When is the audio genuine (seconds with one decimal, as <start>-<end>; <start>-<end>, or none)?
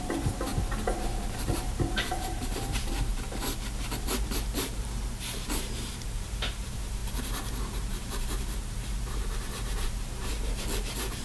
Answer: none